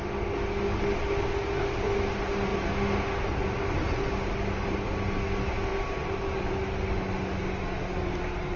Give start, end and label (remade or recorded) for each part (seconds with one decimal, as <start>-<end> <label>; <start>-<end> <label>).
0.0-8.6 recorded